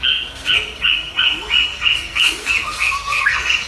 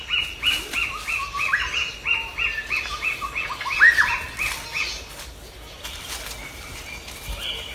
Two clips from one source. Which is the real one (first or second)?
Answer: second